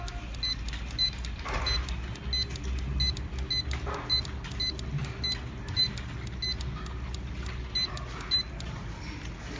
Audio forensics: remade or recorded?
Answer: recorded